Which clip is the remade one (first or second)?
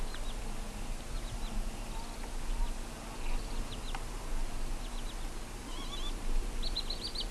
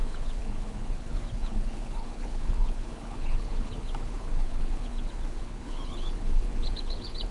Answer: second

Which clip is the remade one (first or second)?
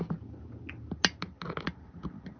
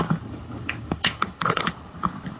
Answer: second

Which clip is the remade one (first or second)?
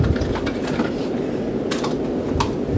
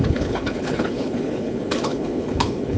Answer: second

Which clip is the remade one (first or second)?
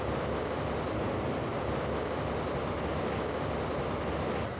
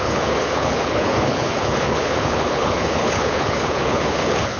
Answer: second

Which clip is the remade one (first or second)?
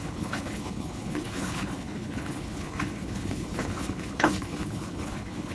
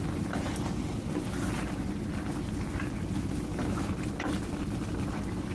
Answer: first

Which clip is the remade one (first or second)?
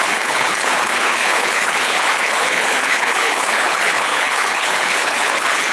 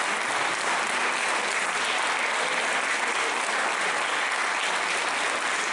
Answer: first